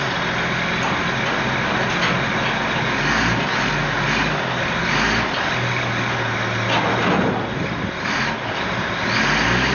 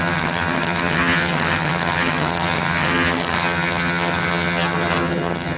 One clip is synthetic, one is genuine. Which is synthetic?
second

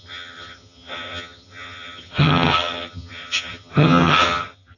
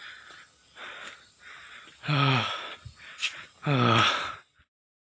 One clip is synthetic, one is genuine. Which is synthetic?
first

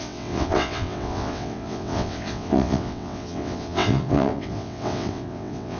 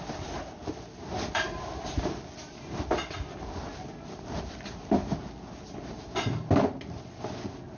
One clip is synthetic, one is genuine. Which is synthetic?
first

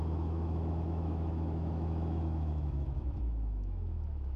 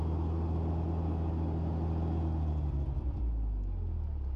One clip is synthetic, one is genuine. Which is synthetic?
first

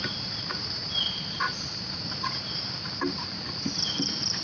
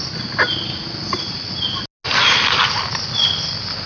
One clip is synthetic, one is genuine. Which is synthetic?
first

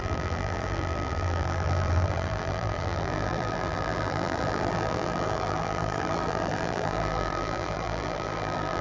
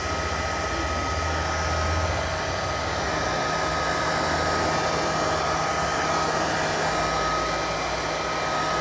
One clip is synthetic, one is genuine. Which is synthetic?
first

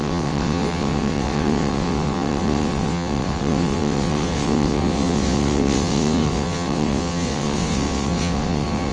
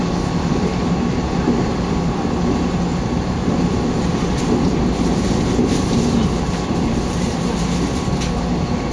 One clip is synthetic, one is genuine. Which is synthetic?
first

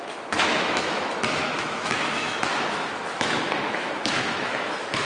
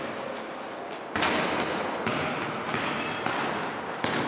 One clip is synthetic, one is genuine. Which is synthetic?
first